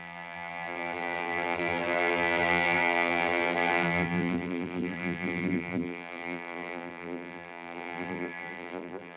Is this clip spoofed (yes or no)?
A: yes